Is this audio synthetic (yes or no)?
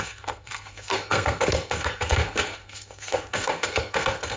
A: yes